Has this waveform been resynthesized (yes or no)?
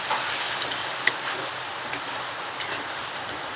no